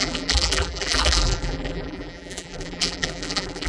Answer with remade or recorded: remade